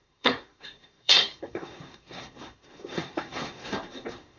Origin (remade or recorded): remade